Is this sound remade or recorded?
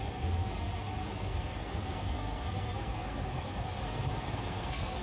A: remade